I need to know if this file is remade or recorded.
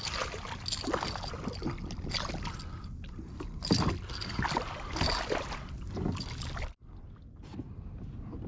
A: recorded